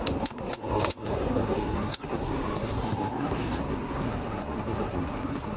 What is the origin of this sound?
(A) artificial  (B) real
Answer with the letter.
A